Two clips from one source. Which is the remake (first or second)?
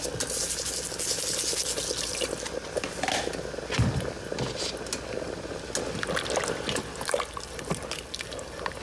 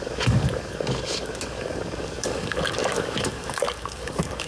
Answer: second